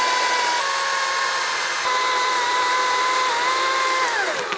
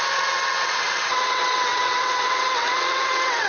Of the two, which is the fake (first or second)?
second